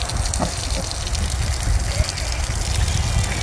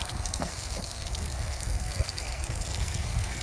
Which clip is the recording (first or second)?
first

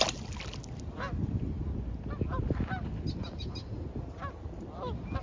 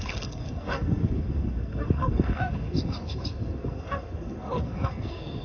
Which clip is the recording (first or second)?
first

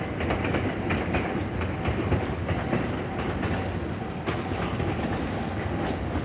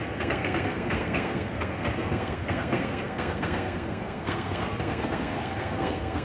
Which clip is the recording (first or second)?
first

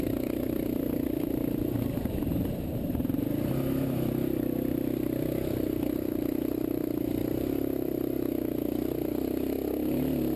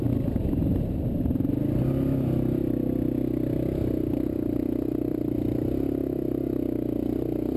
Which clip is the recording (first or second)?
second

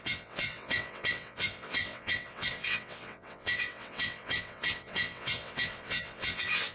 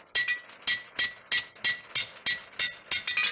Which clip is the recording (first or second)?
second